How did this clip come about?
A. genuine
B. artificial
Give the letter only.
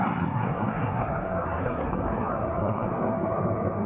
B